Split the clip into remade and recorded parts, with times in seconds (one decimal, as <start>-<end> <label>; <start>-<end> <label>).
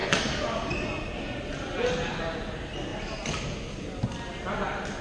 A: 0.0-0.7 remade; 0.7-5.0 recorded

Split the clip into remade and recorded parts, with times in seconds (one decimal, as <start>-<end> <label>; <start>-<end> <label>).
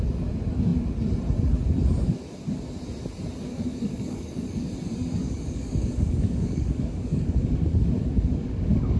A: 0.0-3.5 recorded; 3.5-4.7 remade; 4.7-5.2 recorded; 5.2-9.0 remade